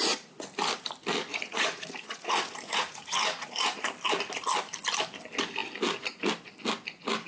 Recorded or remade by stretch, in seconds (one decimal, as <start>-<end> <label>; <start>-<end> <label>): 0.0-1.3 recorded; 1.3-3.8 remade; 3.8-7.3 recorded